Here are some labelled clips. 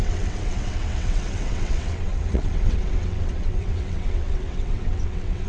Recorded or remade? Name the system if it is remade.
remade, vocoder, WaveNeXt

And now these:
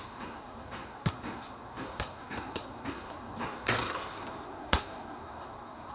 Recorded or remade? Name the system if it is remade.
remade, codec, SNAC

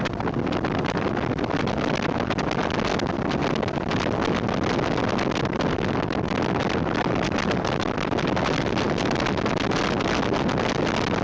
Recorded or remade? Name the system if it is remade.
recorded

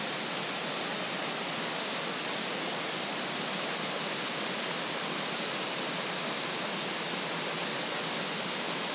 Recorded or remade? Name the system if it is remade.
recorded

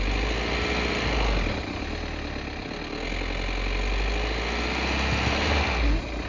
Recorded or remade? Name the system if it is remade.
recorded